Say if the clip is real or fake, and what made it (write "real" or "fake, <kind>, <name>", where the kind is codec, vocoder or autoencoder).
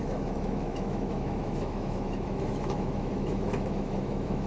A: fake, autoencoder, DAC-VAE